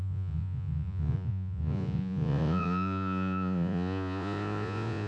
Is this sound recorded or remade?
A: remade